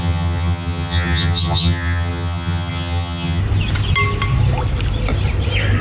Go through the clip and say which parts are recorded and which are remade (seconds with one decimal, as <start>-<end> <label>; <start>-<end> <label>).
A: 0.0-3.4 remade; 3.4-5.8 recorded

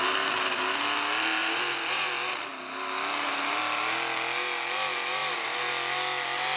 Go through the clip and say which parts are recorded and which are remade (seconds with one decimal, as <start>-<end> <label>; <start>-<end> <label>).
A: 0.0-1.4 recorded; 1.4-2.1 remade; 2.1-5.2 recorded; 5.2-5.7 remade; 5.7-6.6 recorded

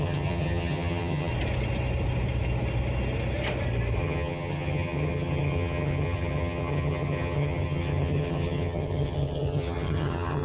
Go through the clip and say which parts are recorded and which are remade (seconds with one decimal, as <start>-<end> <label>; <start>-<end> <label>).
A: 0.0-1.3 remade; 1.3-4.0 recorded; 4.0-10.4 remade

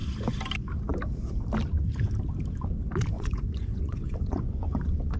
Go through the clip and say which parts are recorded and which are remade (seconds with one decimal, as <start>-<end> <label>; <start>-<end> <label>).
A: 0.0-3.1 recorded; 3.1-5.2 remade

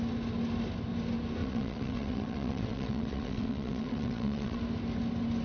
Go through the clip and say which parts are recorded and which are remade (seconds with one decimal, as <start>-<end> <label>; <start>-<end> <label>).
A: 0.0-1.4 recorded; 1.4-4.6 remade; 4.6-5.4 recorded

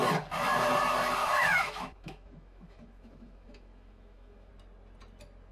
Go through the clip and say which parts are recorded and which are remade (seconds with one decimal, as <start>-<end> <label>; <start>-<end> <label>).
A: 0.0-1.2 recorded; 1.2-4.5 remade; 4.5-5.5 recorded

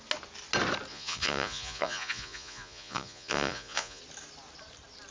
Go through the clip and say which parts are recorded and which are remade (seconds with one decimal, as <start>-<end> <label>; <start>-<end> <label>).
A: 0.0-0.9 recorded; 0.9-4.0 remade; 4.0-5.1 recorded